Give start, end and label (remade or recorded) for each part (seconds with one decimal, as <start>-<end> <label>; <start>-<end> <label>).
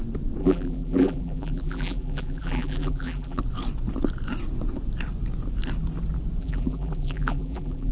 0.0-0.4 recorded; 0.4-3.4 remade; 3.4-6.4 recorded; 6.4-7.9 remade